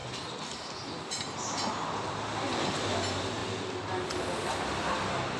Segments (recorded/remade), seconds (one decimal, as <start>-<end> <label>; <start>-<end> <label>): 0.0-5.4 recorded